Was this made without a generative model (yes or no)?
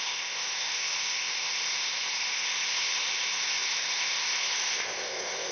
no